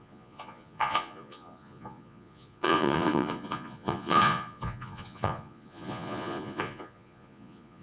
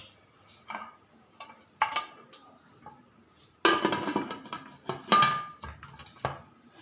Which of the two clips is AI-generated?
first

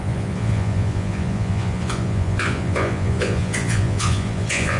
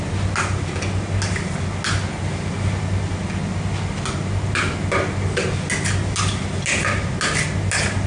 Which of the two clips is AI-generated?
first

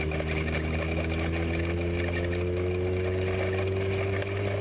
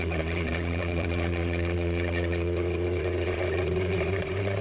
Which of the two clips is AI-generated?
second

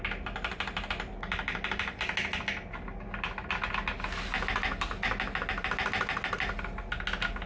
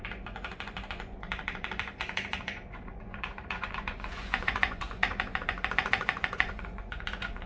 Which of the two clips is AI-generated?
second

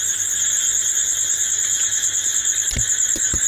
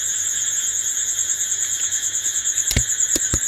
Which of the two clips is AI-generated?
second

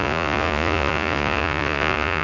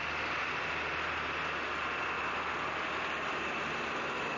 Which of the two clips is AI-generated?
first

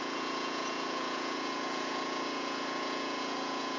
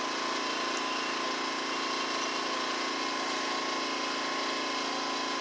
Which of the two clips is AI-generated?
first